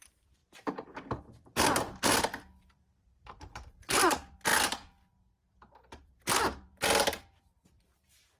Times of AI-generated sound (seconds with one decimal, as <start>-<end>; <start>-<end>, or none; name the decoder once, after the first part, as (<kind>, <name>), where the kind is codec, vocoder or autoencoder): 0.0-0.4 (vocoder, BigVGAN v2); 2.6-4.5; 6.4-8.4